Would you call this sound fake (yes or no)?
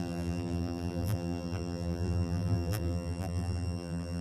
yes